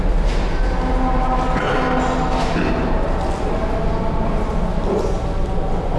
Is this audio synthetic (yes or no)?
no